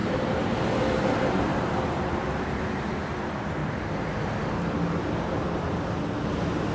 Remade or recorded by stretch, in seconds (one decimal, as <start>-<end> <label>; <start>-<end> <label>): 0.0-0.7 remade; 0.7-1.5 recorded; 1.5-2.4 remade; 2.4-3.6 recorded; 3.6-4.4 remade; 4.4-6.7 recorded